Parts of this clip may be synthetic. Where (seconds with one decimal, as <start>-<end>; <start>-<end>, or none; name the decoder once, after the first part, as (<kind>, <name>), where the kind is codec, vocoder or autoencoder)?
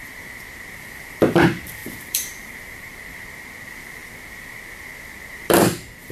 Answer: 1.8-2.9 (vocoder, BigVGAN v2)